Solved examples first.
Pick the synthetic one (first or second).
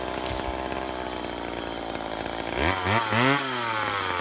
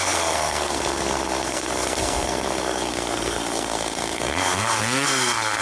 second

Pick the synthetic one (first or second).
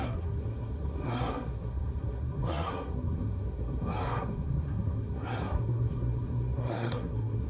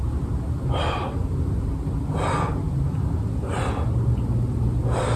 first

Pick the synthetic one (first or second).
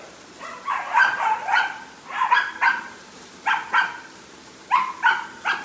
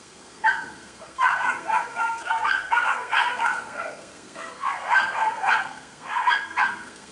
second